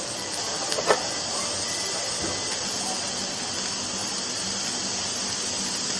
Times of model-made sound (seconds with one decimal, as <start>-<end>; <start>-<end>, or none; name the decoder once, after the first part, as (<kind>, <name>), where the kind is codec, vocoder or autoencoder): none